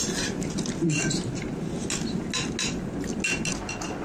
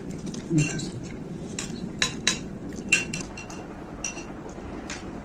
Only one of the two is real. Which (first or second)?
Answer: first